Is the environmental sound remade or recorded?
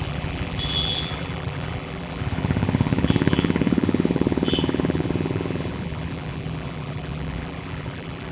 remade